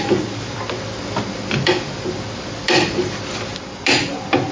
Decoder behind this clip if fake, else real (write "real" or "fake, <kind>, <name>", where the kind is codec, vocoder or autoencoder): real